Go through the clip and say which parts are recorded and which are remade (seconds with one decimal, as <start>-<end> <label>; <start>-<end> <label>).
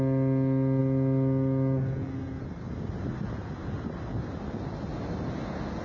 0.0-5.8 recorded